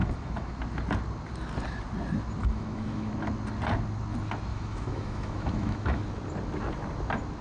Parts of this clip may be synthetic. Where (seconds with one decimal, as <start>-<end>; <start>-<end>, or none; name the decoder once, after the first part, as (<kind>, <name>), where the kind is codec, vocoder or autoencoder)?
0.0-0.6 (autoencoder, DAC-VAE); 2.4-3.1; 4.5-6.0